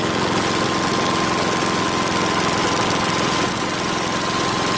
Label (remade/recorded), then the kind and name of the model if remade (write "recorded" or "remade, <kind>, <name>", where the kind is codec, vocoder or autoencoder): recorded